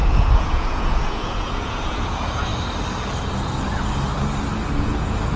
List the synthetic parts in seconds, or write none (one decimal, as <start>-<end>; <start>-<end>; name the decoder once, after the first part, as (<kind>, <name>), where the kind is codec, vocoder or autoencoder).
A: 0.0-2.5 (vocoder, Vocos); 4.7-5.4